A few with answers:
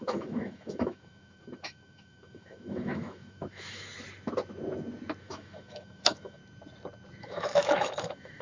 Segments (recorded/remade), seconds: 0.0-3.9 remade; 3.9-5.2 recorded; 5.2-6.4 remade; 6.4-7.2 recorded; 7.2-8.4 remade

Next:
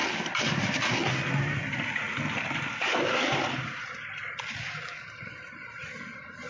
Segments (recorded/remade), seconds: 0.0-6.5 recorded

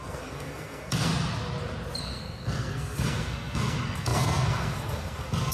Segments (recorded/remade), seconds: 0.0-1.1 remade; 1.1-2.0 recorded; 2.0-5.5 remade

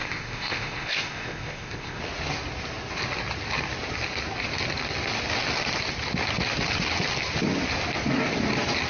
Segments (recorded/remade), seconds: 0.0-2.0 remade; 2.0-8.9 recorded

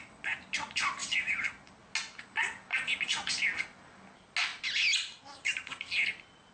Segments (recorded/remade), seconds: 0.0-6.5 recorded

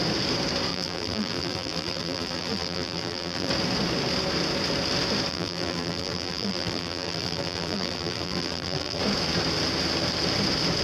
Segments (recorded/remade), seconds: 0.0-0.7 recorded; 0.7-3.5 remade; 3.5-5.3 recorded; 5.3-9.0 remade; 9.0-10.8 recorded